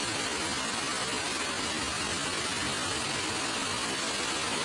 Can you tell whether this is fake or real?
real